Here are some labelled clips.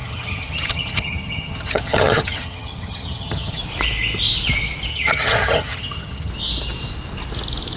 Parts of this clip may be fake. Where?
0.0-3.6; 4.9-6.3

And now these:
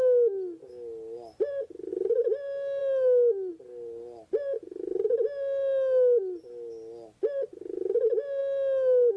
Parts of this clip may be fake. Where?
none

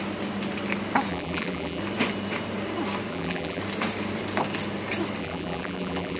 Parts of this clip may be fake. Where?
1.1-1.8; 3.1-3.6; 5.2-6.2

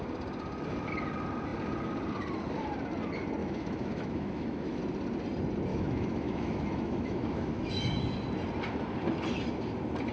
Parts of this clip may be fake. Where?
3.4-4.8; 5.7-7.7

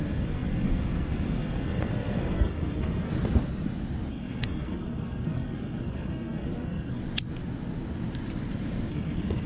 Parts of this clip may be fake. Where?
0.0-3.1; 4.1-7.0; 8.9-9.5

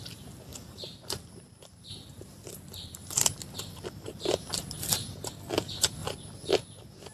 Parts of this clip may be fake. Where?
0.5-4.7; 6.0-6.5

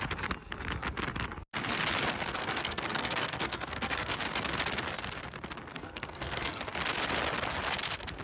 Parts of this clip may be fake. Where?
2.4-4.1; 5.7-6.6